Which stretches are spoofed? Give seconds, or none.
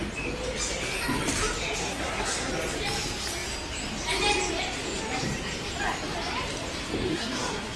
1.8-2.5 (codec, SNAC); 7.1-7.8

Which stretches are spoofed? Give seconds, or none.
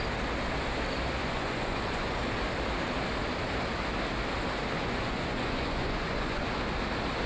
1.2-2.2 (vocoder, Vocos); 4.8-6.4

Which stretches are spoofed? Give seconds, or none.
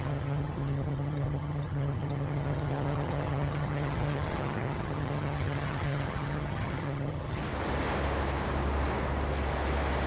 0.0-7.4 (vocoder, HiFi-GAN)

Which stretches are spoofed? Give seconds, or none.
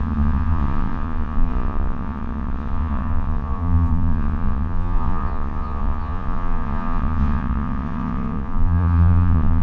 0.0-9.6 (vocoder, Vocos)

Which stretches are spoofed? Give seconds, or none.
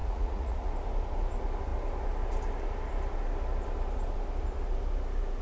0.0-0.7 (vocoder, Vocos)